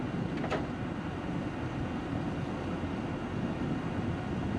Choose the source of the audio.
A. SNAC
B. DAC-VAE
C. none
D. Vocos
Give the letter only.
C